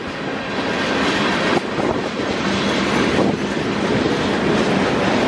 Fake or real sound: real